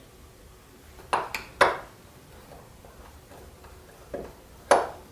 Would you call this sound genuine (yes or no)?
yes